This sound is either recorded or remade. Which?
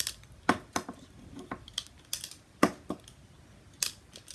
recorded